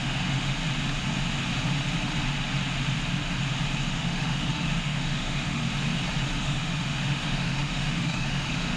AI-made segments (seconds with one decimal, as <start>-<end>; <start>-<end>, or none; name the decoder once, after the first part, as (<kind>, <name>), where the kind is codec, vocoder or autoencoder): 0.0-0.6 (autoencoder, DAC-VAE); 3.9-5.6; 6.4-8.8

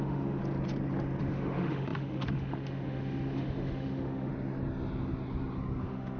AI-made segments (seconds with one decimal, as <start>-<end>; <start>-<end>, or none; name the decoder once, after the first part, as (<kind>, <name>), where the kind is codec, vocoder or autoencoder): 0.0-0.4 (autoencoder, DAC-VAE); 1.2-4.3; 5.8-6.2

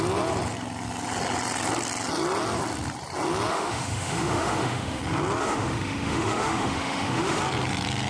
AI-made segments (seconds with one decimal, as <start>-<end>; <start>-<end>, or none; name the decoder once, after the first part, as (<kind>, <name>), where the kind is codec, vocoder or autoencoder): 3.5-5.0 (autoencoder, DAC-VAE); 5.4-7.4

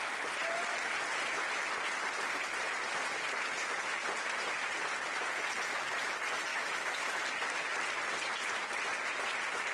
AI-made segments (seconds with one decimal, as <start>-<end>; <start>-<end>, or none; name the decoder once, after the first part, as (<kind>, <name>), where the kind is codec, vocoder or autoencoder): 6.5-7.1 (autoencoder, DAC-VAE)